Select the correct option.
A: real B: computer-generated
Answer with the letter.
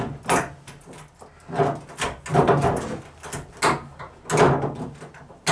A